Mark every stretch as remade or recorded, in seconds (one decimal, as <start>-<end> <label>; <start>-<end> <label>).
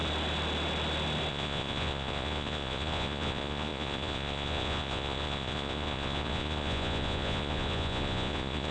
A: 0.0-1.3 recorded; 1.3-8.7 remade